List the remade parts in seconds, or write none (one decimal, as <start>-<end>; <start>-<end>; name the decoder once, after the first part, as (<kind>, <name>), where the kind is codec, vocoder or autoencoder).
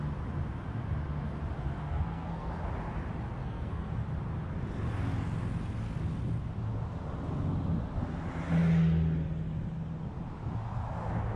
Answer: 1.8-2.5 (codec, SNAC); 3.4-3.9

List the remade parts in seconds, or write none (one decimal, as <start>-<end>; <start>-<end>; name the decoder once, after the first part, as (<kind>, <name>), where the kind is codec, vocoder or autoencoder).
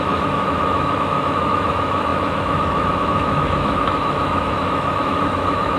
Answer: 0.0-5.8 (autoencoder, DAC-VAE)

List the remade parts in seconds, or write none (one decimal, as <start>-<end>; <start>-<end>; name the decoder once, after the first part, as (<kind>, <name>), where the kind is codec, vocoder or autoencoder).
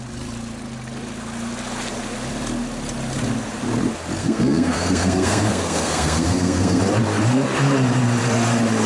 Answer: 4.2-6.8 (codec, SNAC)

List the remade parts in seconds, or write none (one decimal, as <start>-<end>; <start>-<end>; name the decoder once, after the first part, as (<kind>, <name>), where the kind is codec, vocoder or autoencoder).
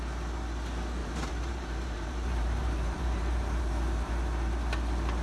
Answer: 1.0-4.1 (vocoder, BigVGAN v2)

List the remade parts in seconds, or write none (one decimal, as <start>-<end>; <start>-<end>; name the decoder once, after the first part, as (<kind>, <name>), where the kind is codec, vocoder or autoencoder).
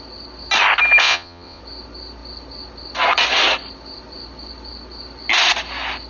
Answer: 1.0-1.6 (vocoder, WaveNeXt)